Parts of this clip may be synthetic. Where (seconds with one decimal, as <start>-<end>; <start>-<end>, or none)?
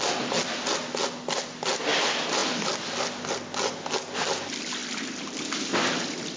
none